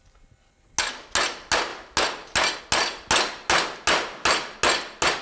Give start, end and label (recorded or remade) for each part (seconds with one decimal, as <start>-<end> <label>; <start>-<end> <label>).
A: 0.0-5.2 recorded